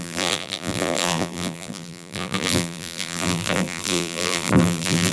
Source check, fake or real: fake